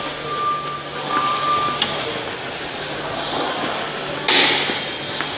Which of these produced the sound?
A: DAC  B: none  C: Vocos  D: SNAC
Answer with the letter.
B